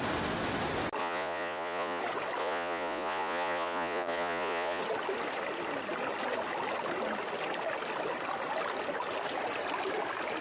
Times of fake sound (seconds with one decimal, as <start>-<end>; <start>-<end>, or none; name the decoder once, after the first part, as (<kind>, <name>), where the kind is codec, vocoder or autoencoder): 1.0-2.0 (vocoder, Vocos); 2.4-4.8